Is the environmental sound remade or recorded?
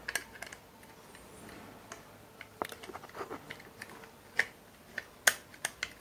recorded